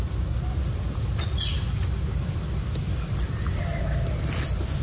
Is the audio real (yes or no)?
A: yes